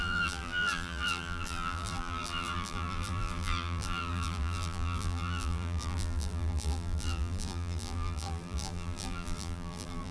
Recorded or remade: remade